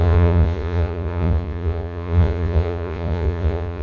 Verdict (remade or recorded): remade